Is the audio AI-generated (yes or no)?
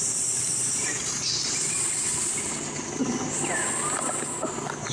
no